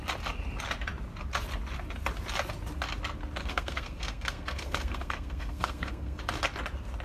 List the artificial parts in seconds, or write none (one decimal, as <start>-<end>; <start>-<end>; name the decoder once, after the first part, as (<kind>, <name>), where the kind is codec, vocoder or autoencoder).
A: 3.4-6.2 (codec, SNAC)